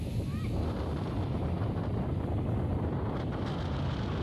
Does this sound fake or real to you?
real